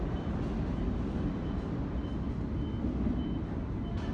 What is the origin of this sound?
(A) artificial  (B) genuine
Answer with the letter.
B